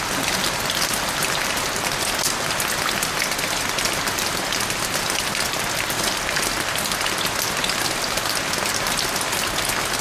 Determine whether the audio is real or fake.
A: real